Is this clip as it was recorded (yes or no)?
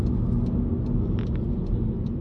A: yes